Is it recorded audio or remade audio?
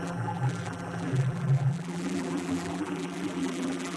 remade